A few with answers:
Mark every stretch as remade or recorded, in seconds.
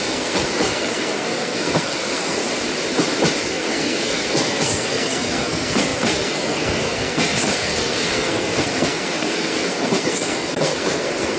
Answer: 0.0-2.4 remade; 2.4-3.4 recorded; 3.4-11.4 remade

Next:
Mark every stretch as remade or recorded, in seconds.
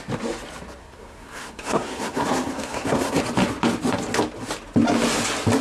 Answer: 0.0-0.8 recorded; 0.8-3.2 remade; 3.2-5.6 recorded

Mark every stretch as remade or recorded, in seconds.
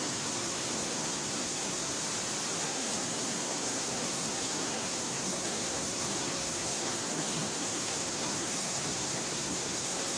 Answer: 0.0-2.0 remade; 2.0-2.6 recorded; 2.6-10.2 remade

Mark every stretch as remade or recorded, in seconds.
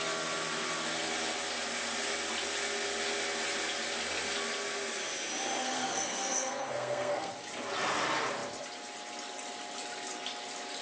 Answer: 0.0-5.6 recorded; 5.6-7.3 remade; 7.3-10.8 recorded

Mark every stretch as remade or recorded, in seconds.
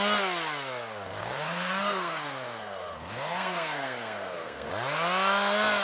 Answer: 0.0-1.2 recorded; 1.2-4.7 remade; 4.7-5.8 recorded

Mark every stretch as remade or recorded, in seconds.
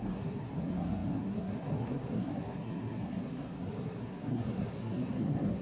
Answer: 0.0-5.6 remade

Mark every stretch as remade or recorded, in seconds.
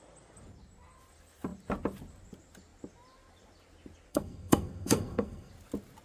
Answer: 0.0-4.1 recorded; 4.1-5.5 remade; 5.5-6.0 recorded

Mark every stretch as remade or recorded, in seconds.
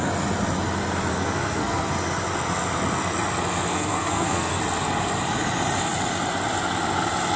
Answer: 0.0-1.1 recorded; 1.1-1.9 remade; 1.9-3.7 recorded; 3.7-4.6 remade; 4.6-7.4 recorded